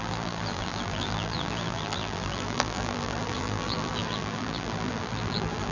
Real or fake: fake